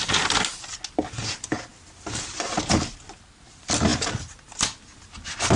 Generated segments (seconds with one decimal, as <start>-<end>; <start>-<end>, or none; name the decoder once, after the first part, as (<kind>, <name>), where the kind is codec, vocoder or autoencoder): none